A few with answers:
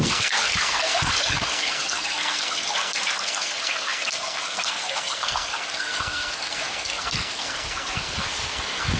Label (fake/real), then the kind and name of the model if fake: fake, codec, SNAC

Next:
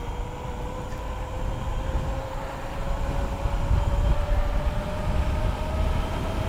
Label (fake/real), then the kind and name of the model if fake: real